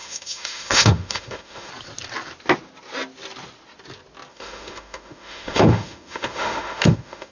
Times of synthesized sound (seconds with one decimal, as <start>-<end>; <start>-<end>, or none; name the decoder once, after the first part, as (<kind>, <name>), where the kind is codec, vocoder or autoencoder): 0.0-1.7 (autoencoder, DAC-VAE); 4.3-7.3